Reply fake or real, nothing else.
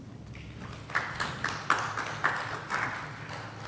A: real